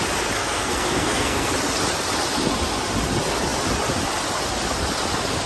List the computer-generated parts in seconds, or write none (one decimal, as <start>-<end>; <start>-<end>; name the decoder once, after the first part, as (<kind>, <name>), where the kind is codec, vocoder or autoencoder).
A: 0.4-1.5 (codec, SNAC)